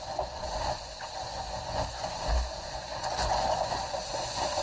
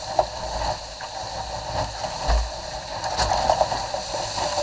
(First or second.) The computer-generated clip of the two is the first